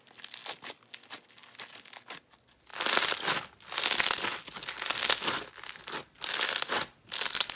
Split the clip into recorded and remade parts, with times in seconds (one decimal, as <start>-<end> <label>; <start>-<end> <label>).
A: 0.0-7.6 recorded